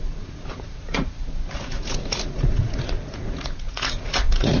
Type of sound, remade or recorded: remade